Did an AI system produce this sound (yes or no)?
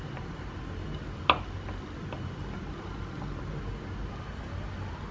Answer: no